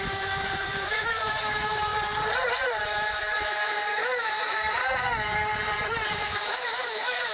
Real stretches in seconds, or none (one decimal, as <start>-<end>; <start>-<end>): 1.9-2.8; 4.8-6.1